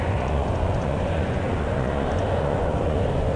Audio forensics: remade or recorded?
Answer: remade